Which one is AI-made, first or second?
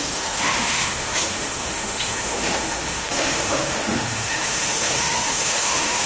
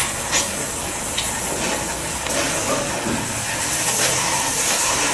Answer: first